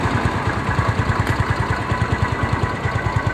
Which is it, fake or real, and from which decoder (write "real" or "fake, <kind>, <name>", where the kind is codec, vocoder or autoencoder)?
real